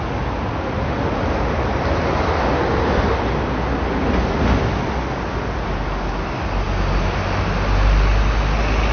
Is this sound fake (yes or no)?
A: no